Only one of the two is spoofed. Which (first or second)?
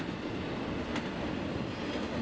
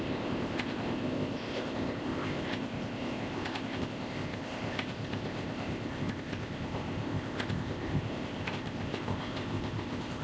second